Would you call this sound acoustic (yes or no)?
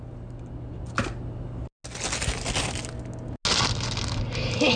yes